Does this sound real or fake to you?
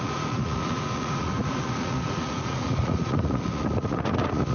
fake